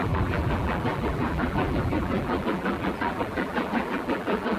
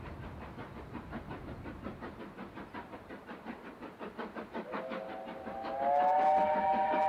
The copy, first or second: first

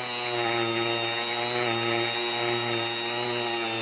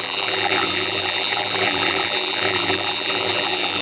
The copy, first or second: second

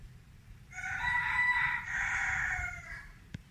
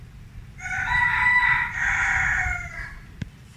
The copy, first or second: first